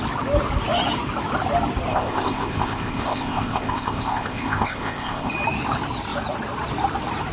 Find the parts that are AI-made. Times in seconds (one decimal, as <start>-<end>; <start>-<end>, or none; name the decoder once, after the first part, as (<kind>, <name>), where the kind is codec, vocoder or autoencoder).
1.9-5.3 (codec, ZipCodec)